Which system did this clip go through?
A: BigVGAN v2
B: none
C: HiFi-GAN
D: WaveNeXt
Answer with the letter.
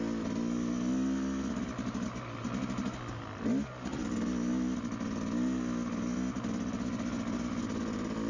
B